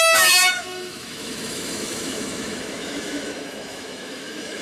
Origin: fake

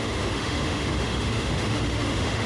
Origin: fake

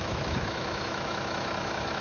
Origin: fake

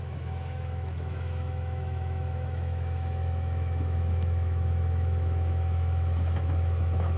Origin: fake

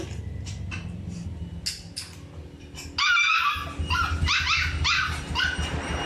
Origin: real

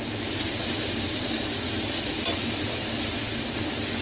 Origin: real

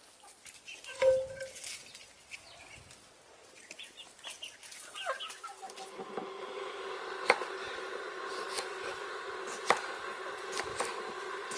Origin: real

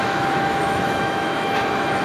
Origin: fake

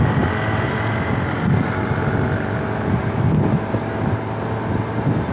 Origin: real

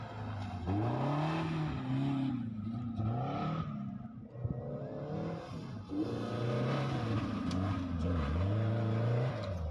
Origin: real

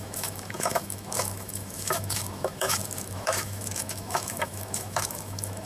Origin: fake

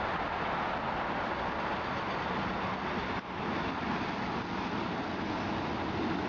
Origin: real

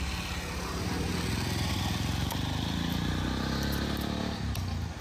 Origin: real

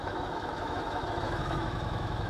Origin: fake